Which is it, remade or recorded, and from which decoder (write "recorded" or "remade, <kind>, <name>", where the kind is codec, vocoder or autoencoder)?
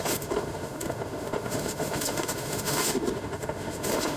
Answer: remade, autoencoder, DAC-VAE